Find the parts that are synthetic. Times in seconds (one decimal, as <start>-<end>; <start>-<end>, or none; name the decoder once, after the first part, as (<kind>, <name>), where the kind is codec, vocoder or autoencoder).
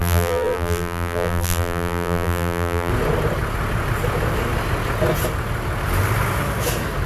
0.0-2.9 (vocoder, BigVGAN v2)